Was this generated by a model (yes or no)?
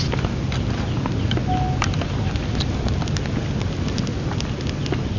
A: no